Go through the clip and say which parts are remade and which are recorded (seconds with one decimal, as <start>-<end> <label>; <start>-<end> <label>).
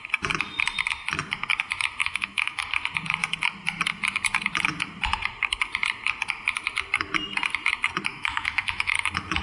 0.0-2.0 recorded; 2.0-2.6 remade; 2.6-8.1 recorded; 8.1-8.9 remade; 8.9-9.4 recorded